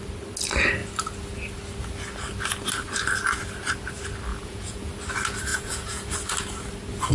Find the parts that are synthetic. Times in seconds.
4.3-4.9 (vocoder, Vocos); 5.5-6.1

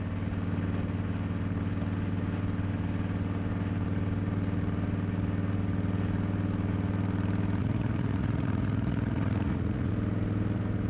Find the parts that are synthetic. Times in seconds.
7.6-9.9 (vocoder, Vocos)